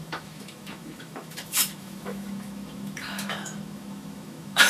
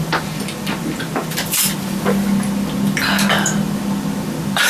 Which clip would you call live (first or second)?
second